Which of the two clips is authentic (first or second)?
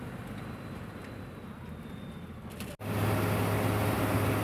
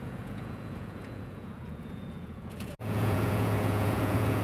first